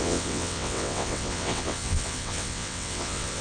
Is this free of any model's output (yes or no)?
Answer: no